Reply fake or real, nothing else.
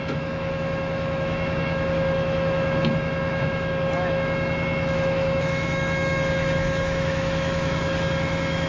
fake